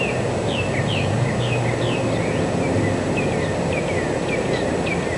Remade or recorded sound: recorded